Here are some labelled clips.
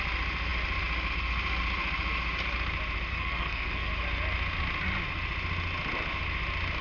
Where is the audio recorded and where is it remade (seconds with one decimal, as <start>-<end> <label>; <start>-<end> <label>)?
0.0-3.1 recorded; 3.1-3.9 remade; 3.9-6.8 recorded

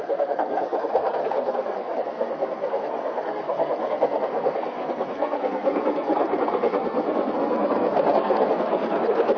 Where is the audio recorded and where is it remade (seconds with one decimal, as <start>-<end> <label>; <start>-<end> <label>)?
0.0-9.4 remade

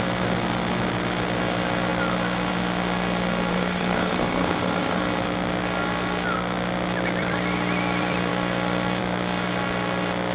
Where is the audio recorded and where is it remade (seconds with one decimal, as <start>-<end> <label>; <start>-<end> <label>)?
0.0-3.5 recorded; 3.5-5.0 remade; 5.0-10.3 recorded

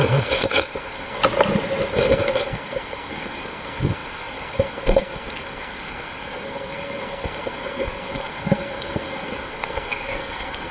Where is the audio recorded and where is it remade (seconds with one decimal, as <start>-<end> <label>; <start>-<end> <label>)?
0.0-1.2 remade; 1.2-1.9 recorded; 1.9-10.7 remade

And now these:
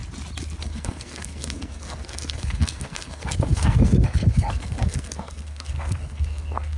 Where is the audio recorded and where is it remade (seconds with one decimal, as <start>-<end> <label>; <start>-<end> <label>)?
0.0-0.6 recorded; 0.6-6.8 remade

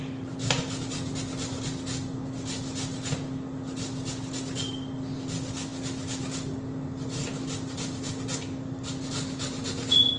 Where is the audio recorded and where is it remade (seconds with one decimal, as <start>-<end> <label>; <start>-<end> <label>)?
0.0-10.2 recorded

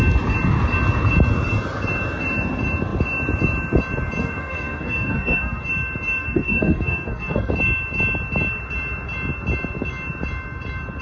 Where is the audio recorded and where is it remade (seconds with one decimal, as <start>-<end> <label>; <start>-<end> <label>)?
0.0-4.2 recorded; 4.2-5.6 remade; 5.6-6.2 recorded; 6.2-7.5 remade; 7.5-11.0 recorded